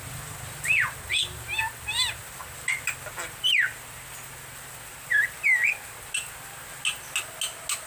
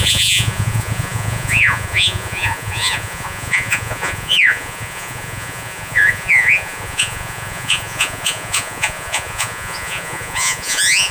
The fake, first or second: second